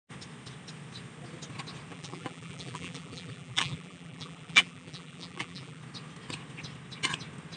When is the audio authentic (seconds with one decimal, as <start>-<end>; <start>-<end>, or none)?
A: 0.0-1.9; 5.8-7.6